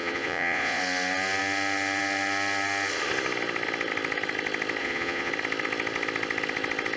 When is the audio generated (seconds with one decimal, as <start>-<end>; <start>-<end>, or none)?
0.0-0.8; 4.8-5.3